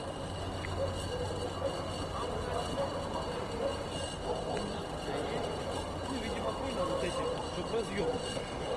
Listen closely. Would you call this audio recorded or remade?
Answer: recorded